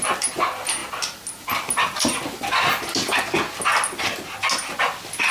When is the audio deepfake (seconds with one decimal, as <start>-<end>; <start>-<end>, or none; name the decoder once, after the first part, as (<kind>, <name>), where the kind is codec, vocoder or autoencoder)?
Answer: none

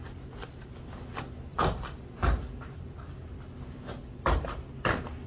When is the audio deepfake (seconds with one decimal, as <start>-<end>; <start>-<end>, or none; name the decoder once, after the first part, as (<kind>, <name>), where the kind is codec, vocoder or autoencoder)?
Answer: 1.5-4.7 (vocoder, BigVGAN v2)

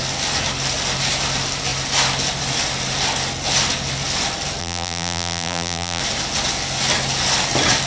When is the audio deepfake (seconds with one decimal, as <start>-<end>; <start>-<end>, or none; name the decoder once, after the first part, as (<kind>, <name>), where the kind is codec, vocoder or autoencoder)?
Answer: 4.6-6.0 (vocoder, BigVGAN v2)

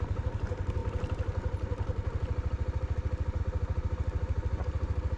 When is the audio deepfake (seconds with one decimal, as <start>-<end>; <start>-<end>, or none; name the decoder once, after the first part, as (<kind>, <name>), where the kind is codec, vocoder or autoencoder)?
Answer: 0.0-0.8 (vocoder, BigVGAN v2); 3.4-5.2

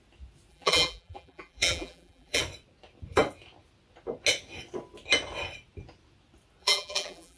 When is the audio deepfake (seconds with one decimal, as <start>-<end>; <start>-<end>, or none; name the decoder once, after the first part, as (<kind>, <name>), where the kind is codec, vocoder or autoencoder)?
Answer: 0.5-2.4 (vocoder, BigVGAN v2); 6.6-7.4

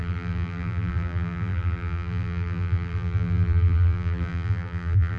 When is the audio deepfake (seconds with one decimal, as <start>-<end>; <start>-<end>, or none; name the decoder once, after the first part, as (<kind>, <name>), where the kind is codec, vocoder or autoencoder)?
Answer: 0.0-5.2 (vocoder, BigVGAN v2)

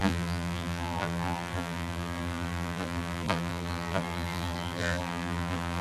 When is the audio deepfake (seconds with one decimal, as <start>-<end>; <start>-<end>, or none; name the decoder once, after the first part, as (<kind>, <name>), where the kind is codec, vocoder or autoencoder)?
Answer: 0.0-5.8 (vocoder, BigVGAN v2)